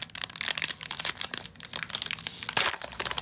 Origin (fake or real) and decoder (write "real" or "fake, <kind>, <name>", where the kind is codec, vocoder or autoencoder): real